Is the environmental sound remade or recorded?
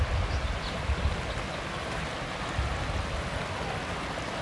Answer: recorded